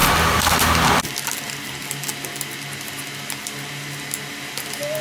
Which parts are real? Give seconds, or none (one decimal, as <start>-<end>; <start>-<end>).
0.0-5.0